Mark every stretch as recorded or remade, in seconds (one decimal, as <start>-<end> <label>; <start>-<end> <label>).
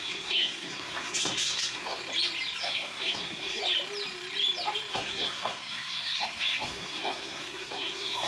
0.0-2.0 remade; 2.0-2.6 recorded; 2.6-3.6 remade; 3.6-4.9 recorded; 4.9-8.3 remade